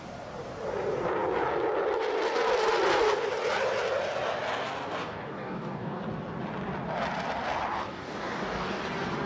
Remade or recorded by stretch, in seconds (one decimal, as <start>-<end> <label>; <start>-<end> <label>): 0.0-5.0 recorded; 5.0-6.0 remade; 6.0-7.9 recorded; 7.9-8.8 remade; 8.8-9.3 recorded